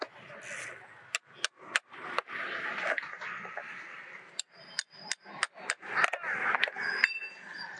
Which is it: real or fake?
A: real